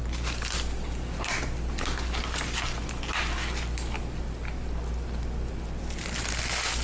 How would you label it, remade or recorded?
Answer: recorded